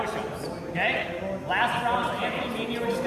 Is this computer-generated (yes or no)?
no